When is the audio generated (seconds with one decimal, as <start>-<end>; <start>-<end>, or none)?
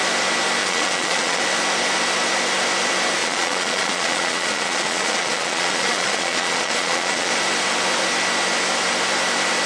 0.6-1.4; 3.2-7.3